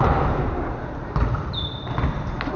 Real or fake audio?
real